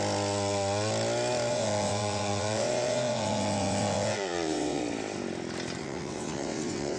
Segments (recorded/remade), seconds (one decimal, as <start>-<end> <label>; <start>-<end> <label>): 0.0-1.5 recorded; 1.5-4.8 remade; 4.8-5.8 recorded; 5.8-7.0 remade